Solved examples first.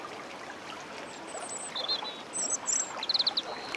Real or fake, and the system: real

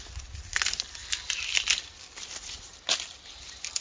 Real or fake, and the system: real